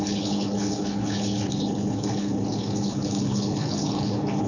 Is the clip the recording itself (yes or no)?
no